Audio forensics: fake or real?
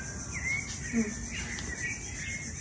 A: real